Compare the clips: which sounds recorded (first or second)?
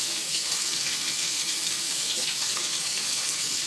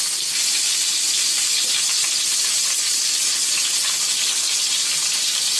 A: second